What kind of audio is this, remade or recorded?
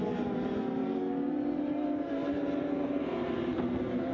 remade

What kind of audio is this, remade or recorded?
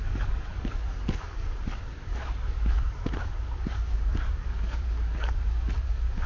remade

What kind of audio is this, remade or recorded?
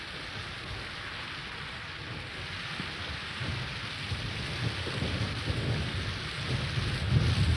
recorded